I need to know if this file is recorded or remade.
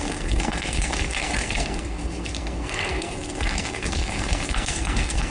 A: remade